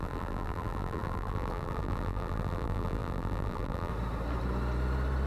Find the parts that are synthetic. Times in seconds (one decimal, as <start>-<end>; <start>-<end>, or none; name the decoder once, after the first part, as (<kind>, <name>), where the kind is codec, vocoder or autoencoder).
0.0-3.9 (vocoder, BigVGAN v2)